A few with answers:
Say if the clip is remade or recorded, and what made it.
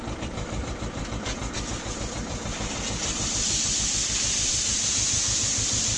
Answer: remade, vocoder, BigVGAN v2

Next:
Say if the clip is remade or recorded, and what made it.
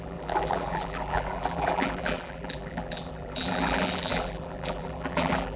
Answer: remade, vocoder, BigVGAN v2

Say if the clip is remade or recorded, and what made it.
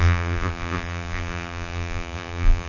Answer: remade, vocoder, BigVGAN v2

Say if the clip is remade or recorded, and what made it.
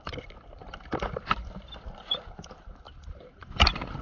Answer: remade, vocoder, BigVGAN v2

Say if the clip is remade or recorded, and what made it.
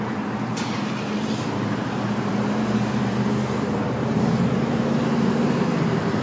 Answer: remade, vocoder, BigVGAN v2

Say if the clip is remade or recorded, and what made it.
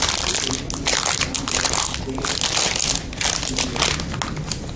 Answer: recorded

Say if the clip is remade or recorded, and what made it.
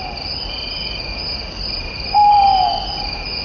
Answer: recorded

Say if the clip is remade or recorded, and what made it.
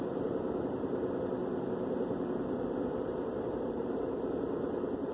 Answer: remade, vocoder, BigVGAN v2